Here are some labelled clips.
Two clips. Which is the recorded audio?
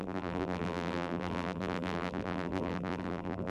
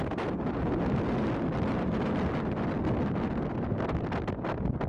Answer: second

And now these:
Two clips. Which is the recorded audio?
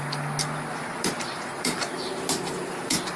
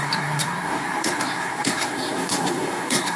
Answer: first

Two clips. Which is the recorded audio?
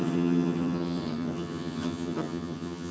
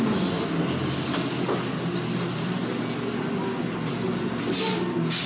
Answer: second